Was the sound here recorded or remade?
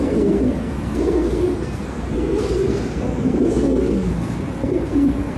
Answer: remade